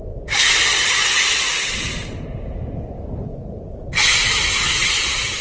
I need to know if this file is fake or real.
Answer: real